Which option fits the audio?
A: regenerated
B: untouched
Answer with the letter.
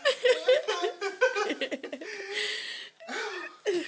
B